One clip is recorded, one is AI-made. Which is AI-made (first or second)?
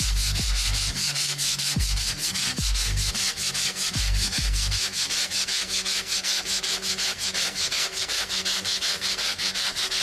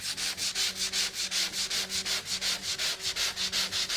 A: first